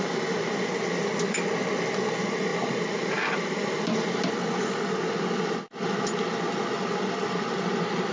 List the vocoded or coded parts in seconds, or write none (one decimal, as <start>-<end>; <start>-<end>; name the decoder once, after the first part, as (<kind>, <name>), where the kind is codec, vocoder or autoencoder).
none